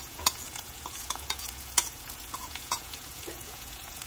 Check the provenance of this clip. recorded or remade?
remade